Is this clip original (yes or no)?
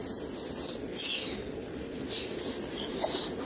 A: yes